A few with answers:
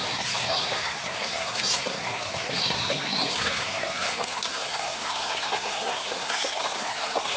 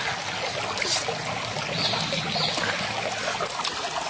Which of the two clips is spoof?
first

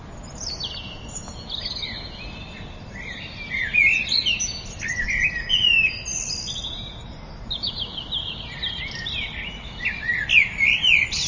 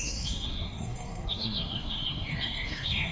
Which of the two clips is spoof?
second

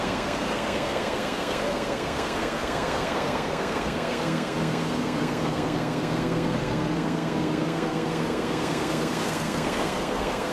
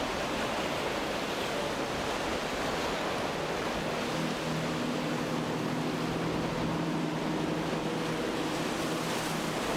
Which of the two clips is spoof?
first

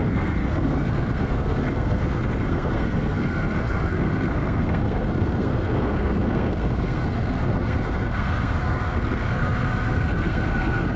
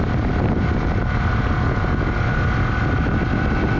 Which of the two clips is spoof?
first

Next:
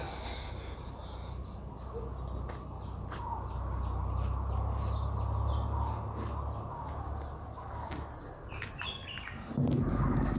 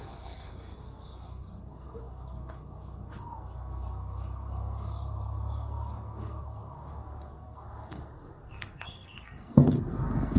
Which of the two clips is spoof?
second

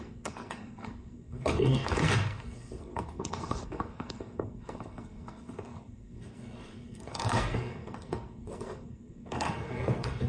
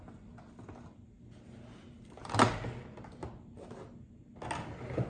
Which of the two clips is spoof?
first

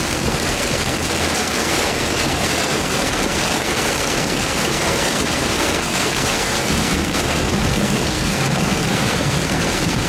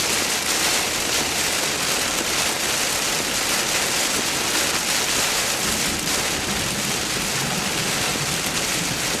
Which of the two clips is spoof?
first